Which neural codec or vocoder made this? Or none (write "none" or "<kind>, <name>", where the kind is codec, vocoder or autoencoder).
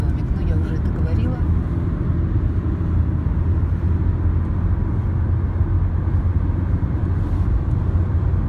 none